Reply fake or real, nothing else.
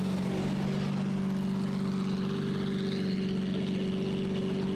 real